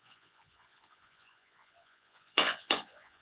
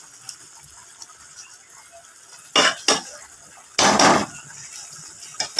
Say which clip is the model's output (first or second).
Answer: first